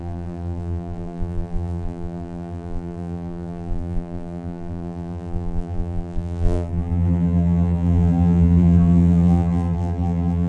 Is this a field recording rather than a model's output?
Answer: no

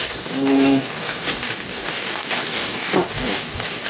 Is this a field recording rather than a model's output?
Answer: no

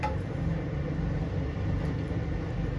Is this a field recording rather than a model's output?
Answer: yes